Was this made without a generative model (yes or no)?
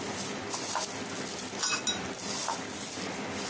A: yes